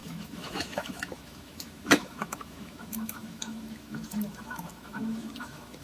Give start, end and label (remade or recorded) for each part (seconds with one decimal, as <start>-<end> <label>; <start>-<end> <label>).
0.0-5.8 remade